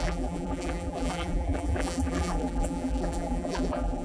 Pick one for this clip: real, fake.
fake